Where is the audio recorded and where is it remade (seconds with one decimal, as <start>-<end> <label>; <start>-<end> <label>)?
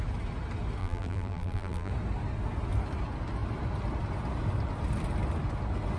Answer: 0.0-0.8 recorded; 0.8-1.9 remade; 1.9-6.0 recorded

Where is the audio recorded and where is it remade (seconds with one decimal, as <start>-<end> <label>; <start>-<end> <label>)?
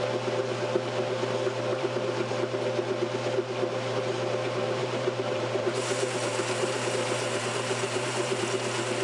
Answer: 0.0-1.7 recorded; 1.7-2.3 remade; 2.3-4.8 recorded; 4.8-8.4 remade; 8.4-9.0 recorded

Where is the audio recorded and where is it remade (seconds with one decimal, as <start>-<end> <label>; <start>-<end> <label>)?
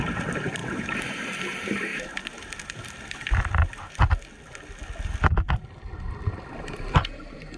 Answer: 0.0-1.9 remade; 1.9-6.5 recorded; 6.5-7.6 remade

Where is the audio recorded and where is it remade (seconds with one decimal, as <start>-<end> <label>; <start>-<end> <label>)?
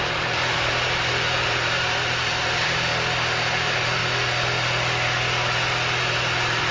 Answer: 0.0-2.9 remade; 2.9-3.5 recorded; 3.5-4.0 remade; 4.0-6.0 recorded; 6.0-6.7 remade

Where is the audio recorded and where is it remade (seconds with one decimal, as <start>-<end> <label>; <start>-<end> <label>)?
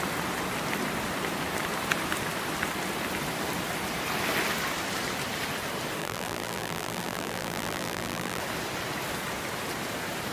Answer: 0.0-6.0 recorded; 6.0-8.4 remade; 8.4-10.3 recorded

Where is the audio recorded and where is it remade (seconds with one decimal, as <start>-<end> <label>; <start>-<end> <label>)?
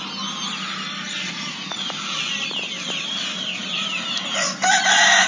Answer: 0.0-3.6 recorded; 3.6-4.7 remade; 4.7-5.3 recorded